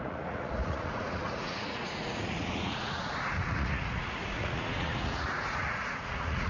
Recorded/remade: remade